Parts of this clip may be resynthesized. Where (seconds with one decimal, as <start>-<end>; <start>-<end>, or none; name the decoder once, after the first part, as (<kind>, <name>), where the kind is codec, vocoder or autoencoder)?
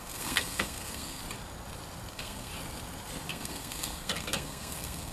0.0-1.2 (codec, SNAC); 2.1-2.5; 3.3-5.1